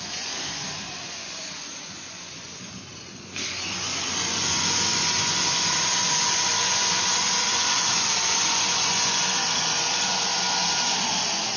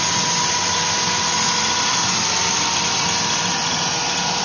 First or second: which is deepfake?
first